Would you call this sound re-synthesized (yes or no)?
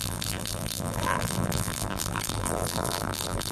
yes